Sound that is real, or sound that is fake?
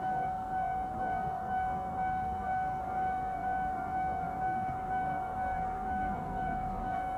fake